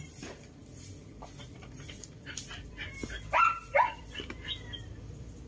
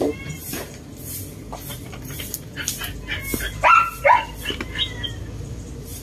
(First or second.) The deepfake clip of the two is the first